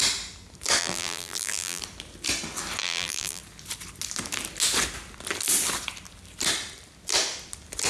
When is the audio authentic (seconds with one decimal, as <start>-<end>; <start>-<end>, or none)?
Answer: 0.0-0.8; 1.8-2.8; 3.4-7.9